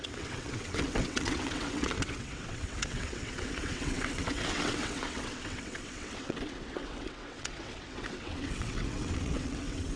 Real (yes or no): no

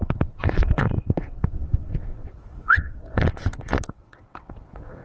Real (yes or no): no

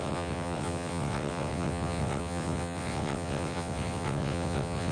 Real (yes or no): no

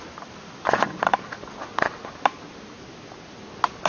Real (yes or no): yes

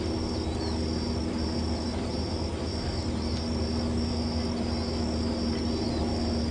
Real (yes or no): yes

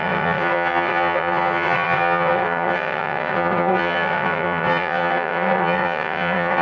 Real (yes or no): no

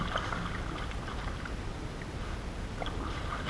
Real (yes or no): yes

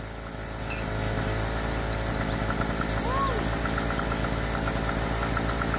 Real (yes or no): yes